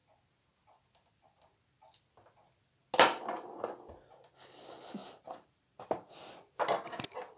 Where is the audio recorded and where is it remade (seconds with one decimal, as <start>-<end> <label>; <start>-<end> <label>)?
0.0-5.0 recorded; 5.0-6.1 remade; 6.1-7.4 recorded